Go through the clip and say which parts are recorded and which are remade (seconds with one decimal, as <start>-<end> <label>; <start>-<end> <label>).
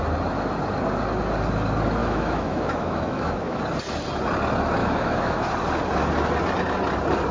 0.0-2.0 recorded; 2.0-3.6 remade; 3.6-4.8 recorded; 4.8-5.5 remade; 5.5-7.3 recorded